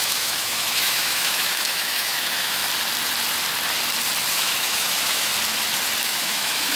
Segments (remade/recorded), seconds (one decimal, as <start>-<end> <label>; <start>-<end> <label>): 0.0-2.6 remade; 2.6-4.3 recorded; 4.3-5.3 remade; 5.3-6.0 recorded; 6.0-6.8 remade